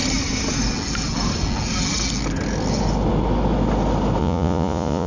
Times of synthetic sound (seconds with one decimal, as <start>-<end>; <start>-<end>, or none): 4.2-5.1